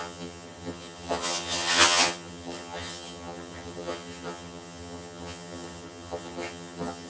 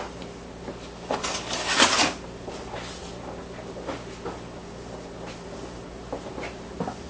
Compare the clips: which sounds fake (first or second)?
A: first